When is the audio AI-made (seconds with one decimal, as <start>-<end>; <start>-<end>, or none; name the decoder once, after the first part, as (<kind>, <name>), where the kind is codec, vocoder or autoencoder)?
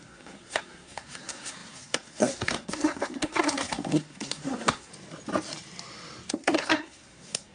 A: 0.0-4.9 (codec, SNAC); 6.3-7.5